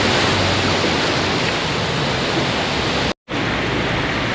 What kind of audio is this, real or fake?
real